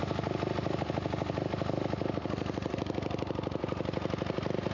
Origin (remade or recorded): recorded